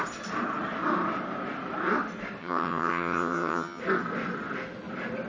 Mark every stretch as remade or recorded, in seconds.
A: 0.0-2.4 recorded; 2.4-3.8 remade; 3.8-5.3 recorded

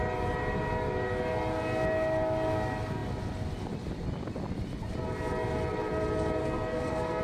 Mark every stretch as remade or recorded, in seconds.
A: 0.0-6.4 recorded; 6.4-7.2 remade

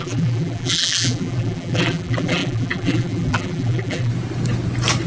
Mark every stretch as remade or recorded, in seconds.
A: 0.0-4.1 remade; 4.1-5.1 recorded